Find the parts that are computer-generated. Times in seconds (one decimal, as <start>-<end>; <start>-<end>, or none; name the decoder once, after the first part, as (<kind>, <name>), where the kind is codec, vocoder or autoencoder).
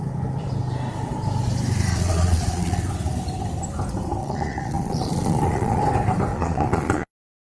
1.9-2.8 (vocoder, Vocos); 4.2-5.8; 6.3-7.1